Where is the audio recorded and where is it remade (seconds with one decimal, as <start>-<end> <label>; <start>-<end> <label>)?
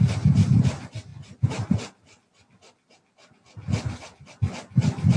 0.0-5.2 recorded